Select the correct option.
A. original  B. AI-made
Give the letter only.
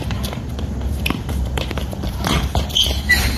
B